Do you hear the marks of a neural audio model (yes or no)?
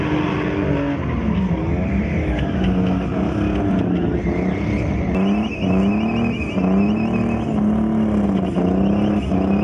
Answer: no